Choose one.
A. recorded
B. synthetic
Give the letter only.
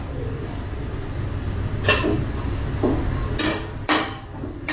A